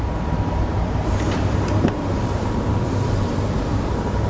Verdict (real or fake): fake